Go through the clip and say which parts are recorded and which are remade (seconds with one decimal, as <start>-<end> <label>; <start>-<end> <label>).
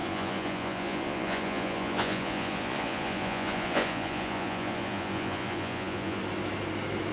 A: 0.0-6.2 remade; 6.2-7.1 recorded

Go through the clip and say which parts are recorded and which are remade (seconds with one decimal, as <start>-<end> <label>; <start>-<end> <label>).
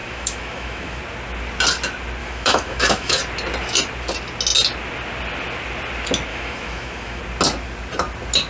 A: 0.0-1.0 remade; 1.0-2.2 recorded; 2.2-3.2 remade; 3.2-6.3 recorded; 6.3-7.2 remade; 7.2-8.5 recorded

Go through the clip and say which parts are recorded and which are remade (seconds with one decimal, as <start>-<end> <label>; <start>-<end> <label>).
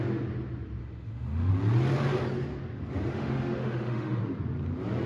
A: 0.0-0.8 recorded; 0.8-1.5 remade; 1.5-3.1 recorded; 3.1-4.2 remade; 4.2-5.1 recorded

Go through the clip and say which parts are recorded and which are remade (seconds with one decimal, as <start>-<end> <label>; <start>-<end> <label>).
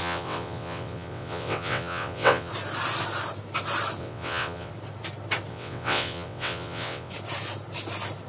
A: 0.0-2.5 remade; 2.5-4.0 recorded; 4.0-4.7 remade; 4.7-5.5 recorded; 5.5-7.1 remade; 7.1-8.3 recorded